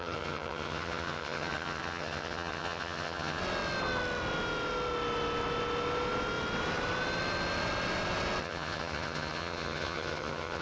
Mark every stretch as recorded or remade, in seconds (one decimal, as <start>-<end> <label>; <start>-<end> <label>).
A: 0.0-3.4 remade; 3.4-8.4 recorded; 8.4-10.6 remade